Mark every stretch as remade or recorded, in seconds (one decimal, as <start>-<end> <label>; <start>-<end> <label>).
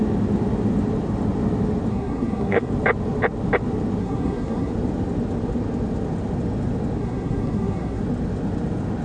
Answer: 0.0-1.9 recorded; 1.9-2.7 remade; 2.7-4.0 recorded; 4.0-4.7 remade; 4.7-7.0 recorded; 7.0-8.0 remade; 8.0-9.0 recorded